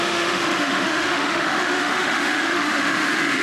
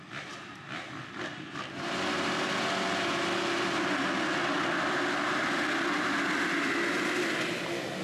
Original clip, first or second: second